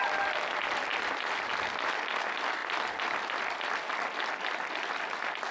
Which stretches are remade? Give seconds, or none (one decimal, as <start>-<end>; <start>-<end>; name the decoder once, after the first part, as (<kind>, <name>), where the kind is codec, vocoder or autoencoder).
none